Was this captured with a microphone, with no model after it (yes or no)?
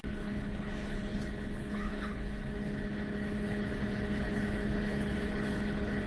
no